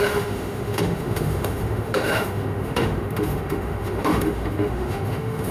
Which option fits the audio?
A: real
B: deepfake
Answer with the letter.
B